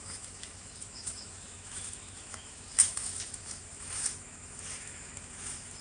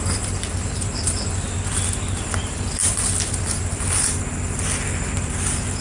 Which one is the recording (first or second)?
second